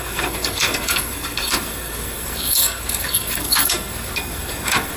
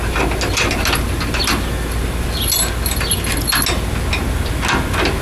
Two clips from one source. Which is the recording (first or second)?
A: second